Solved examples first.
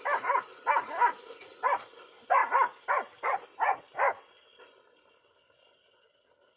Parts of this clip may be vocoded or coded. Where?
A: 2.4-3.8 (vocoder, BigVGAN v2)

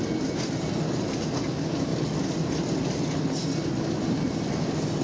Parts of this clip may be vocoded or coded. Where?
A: none

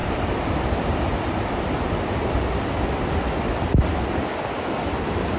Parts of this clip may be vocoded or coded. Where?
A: 0.0-0.6 (vocoder, BigVGAN v2)

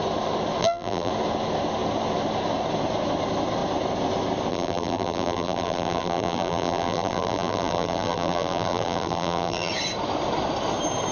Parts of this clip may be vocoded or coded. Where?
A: 0.6-1.1 (vocoder, BigVGAN v2); 4.5-9.7